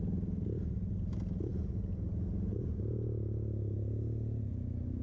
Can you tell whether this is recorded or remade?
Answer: recorded